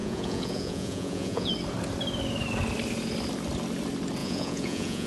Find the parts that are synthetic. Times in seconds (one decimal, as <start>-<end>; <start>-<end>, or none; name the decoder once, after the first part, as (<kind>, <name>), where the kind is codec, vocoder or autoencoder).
0.0-1.5 (vocoder, Vocos); 4.2-5.1

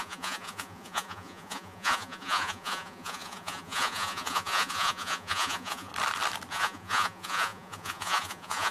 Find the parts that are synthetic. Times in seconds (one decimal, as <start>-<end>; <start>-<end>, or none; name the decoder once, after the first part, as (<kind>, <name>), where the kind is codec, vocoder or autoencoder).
0.0-5.9 (vocoder, Vocos); 6.5-8.7

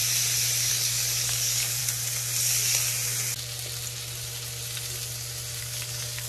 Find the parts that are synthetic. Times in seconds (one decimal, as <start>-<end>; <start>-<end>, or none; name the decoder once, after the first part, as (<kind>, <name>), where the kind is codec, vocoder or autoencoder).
0.7-1.8 (codec, DAC); 5.6-6.3

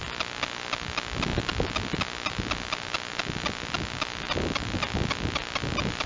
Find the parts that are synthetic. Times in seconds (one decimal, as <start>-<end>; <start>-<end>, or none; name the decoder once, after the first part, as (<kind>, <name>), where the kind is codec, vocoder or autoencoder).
none

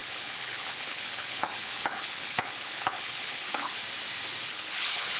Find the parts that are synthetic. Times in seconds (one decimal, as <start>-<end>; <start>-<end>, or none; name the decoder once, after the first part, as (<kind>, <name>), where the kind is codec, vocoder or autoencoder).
0.0-3.8 (codec, HILCodec); 4.5-5.2